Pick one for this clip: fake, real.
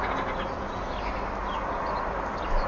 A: real